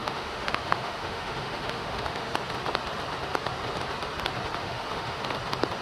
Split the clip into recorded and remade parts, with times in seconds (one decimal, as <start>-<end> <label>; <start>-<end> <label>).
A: 0.0-2.3 remade; 2.3-4.6 recorded; 4.6-5.2 remade; 5.2-5.8 recorded